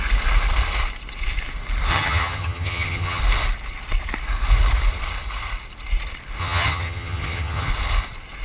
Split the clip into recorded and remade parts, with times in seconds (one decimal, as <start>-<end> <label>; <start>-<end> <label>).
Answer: 0.0-1.9 recorded; 1.9-3.2 remade; 3.2-6.4 recorded; 6.4-7.7 remade; 7.7-8.4 recorded